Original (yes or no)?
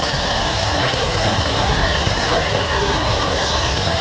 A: no